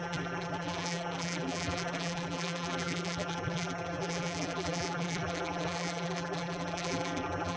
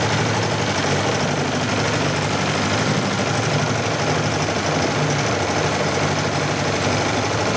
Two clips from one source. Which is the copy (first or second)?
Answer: first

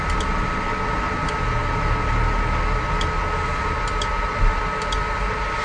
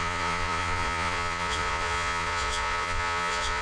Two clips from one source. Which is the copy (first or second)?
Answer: second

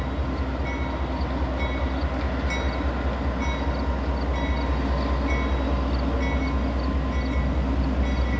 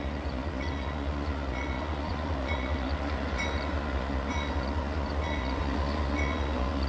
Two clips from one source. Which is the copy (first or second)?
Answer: second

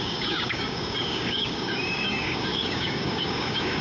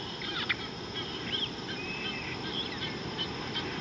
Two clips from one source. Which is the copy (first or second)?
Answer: first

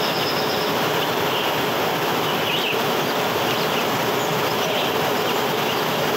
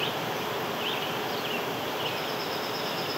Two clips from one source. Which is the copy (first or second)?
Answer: second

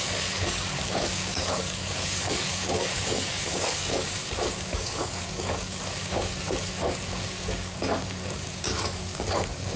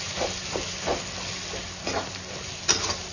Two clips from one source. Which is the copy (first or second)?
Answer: first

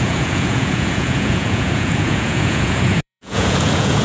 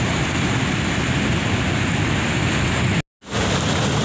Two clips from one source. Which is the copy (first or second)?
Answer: first